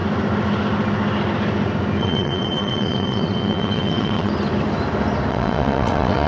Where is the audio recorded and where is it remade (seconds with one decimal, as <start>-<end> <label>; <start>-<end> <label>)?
0.0-2.0 recorded; 2.0-4.3 remade; 4.3-5.3 recorded; 5.3-6.3 remade